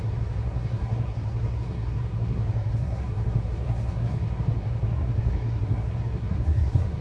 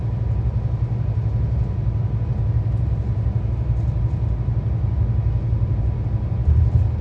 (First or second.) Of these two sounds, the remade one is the first